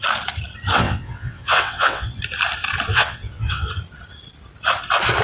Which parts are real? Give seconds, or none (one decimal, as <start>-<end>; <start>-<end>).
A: 0.0-0.7; 2.2-2.9; 3.7-5.2